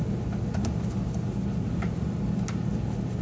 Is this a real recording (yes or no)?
yes